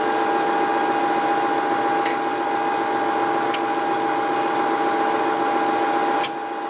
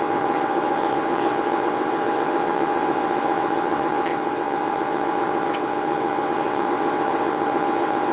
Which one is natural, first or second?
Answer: first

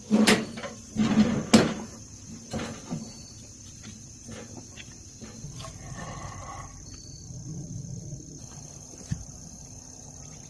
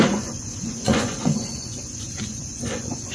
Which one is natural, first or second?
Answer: first